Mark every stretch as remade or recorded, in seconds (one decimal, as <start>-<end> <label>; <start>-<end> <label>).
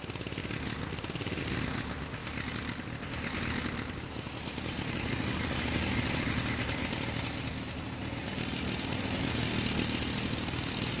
0.0-11.0 recorded